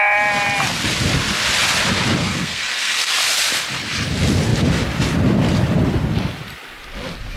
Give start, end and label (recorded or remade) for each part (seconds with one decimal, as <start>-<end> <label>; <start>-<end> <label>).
0.0-2.2 recorded; 2.2-3.1 remade; 3.1-7.4 recorded